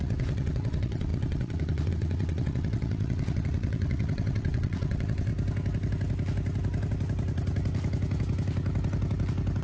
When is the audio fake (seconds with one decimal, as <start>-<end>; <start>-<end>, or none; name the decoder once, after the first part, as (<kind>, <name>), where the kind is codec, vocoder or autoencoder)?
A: 0.0-5.3 (vocoder, WaveNeXt)